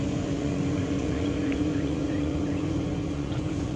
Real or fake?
fake